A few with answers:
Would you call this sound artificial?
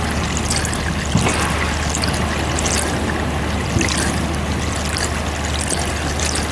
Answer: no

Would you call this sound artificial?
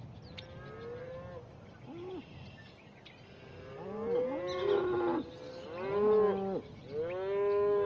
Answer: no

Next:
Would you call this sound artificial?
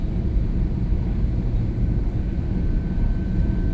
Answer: no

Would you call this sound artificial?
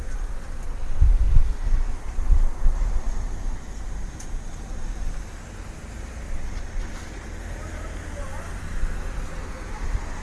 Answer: no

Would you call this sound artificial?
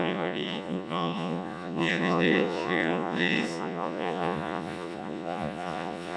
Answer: yes